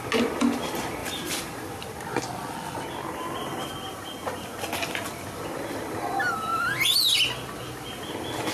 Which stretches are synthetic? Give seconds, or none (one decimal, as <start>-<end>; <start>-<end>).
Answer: none